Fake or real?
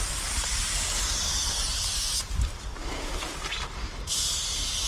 real